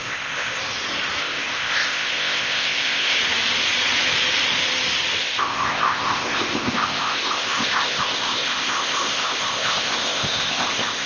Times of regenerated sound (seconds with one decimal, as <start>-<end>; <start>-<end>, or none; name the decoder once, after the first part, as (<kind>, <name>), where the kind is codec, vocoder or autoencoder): 0.0-0.6 (codec, ZipCodec); 1.2-3.2; 5.2-11.1